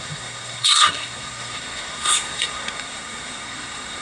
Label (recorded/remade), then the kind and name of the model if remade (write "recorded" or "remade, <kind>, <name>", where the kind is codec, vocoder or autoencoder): remade, codec, SNAC